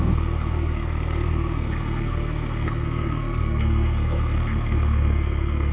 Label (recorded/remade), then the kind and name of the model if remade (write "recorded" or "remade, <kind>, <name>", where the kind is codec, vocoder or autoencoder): remade, codec, SNAC